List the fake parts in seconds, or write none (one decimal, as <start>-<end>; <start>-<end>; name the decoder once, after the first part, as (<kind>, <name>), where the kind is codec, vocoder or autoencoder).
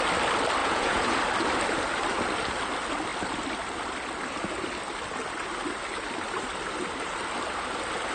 0.6-1.2 (vocoder, Vocos)